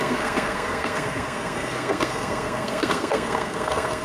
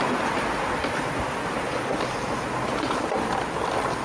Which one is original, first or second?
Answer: second